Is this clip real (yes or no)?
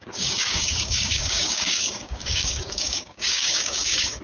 no